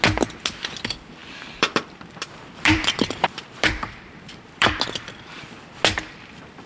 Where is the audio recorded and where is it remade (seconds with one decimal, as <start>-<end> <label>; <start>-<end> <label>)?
0.0-1.2 recorded; 1.2-5.2 remade; 5.2-6.7 recorded